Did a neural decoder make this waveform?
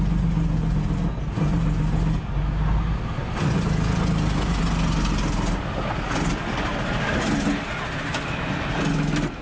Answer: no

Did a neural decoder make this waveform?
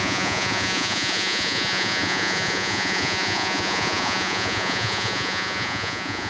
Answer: yes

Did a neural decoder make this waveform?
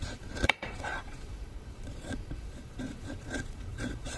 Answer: yes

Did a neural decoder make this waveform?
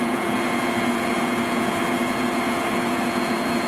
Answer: yes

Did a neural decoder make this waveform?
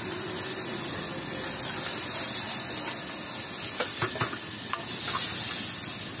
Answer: no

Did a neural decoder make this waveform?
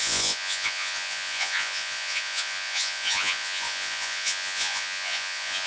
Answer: yes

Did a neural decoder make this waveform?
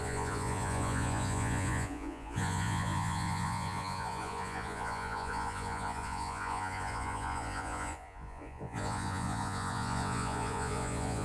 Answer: yes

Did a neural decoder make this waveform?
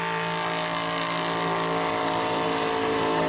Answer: no